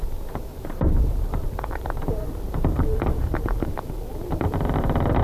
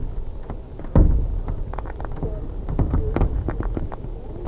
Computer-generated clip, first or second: first